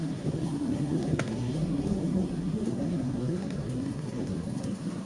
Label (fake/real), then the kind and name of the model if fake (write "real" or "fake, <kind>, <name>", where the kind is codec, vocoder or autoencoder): fake, codec, SNAC